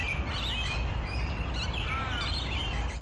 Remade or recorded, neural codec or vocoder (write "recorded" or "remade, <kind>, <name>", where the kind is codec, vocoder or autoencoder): recorded